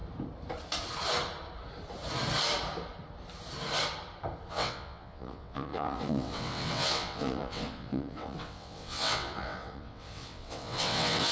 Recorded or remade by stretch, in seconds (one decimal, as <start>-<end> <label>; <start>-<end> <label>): 0.0-4.5 recorded; 4.5-11.3 remade